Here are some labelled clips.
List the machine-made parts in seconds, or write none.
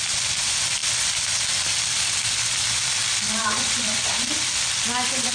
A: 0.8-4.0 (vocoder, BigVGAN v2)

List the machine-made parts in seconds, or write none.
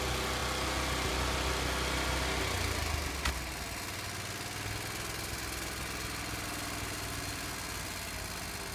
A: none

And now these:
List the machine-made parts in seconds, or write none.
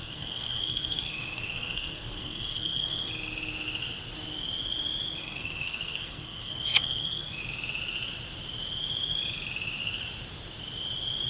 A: 0.0-3.1 (codec, SNAC); 5.2-7.4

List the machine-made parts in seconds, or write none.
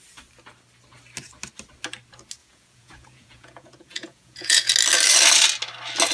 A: 2.4-4.7 (vocoder, Vocos)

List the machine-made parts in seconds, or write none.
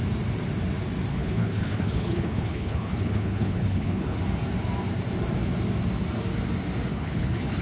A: 1.1-4.2 (codec, HILCodec); 6.9-7.6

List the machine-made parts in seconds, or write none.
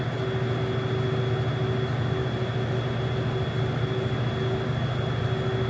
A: none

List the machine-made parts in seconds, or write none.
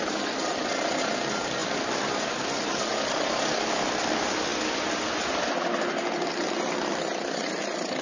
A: 1.6-2.2 (vocoder, BigVGAN v2); 6.9-7.6